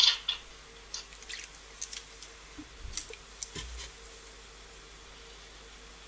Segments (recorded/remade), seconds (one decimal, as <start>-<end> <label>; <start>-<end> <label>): 0.0-6.1 recorded